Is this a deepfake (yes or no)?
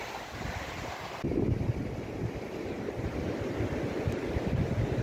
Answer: no